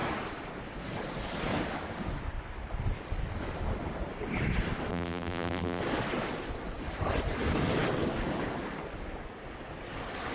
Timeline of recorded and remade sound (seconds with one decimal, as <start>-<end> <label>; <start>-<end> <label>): 0.0-4.9 recorded; 4.9-5.8 remade; 5.8-10.3 recorded